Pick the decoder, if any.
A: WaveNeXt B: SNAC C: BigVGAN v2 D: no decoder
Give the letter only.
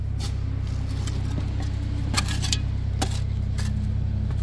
D